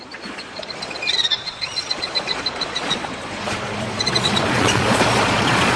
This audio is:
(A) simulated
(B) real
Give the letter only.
A